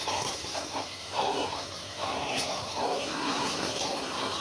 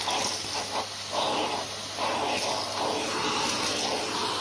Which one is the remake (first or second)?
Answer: first